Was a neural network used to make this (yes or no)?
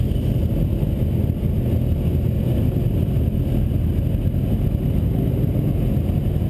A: no